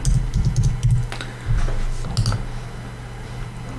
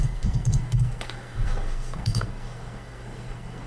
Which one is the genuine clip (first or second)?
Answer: first